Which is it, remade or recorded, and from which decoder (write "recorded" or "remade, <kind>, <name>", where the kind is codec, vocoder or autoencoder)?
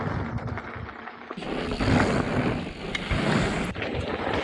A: recorded